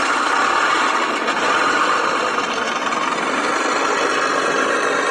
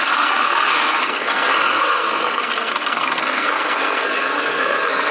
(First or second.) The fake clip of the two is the second